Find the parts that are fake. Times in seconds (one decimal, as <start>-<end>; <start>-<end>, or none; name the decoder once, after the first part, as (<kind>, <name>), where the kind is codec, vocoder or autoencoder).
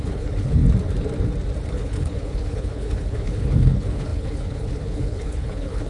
0.0-0.6 (codec, HILCodec); 1.7-5.9